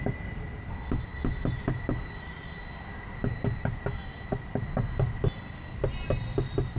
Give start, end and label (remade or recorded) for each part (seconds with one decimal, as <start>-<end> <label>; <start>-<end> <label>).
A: 0.0-6.8 recorded